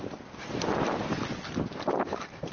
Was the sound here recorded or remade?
recorded